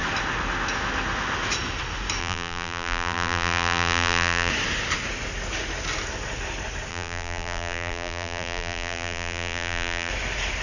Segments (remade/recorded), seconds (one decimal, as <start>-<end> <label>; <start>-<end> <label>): 0.0-2.2 recorded; 2.2-4.5 remade; 4.5-6.9 recorded; 6.9-10.1 remade; 10.1-10.6 recorded